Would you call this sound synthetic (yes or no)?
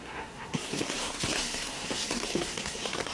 yes